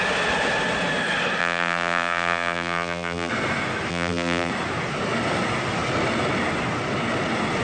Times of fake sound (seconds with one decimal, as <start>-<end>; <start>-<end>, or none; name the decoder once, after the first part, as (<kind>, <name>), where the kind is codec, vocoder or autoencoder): 1.4-3.3 (vocoder, BigVGAN v2); 3.9-4.5

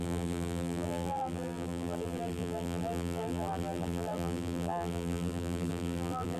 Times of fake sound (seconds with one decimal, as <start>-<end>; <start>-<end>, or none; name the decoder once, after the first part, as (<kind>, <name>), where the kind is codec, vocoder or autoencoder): 0.0-6.4 (vocoder, BigVGAN v2)